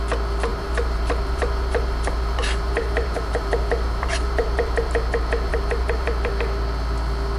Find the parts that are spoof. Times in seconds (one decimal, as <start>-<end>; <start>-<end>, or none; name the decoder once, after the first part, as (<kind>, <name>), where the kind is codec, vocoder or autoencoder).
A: 0.5-4.9 (vocoder, BigVGAN v2); 5.5-6.3

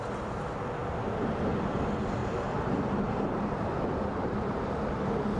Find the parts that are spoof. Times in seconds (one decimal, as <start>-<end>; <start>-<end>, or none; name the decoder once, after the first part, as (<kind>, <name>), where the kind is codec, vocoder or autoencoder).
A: 2.2-3.7 (vocoder, BigVGAN v2)

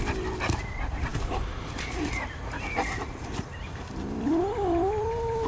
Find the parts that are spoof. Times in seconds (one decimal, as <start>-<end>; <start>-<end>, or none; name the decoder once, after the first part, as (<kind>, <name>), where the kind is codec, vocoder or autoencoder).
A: 0.0-5.5 (vocoder, BigVGAN v2)

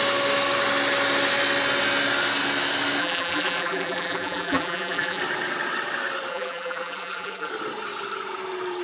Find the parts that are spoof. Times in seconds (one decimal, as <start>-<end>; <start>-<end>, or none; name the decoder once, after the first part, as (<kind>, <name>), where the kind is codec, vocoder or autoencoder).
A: 3.0-5.2 (vocoder, BigVGAN v2); 6.3-7.5

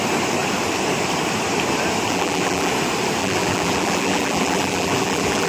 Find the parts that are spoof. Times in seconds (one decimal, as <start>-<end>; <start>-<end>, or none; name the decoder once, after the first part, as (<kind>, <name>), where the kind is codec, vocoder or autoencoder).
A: 2.1-2.7 (vocoder, BigVGAN v2); 3.2-5.5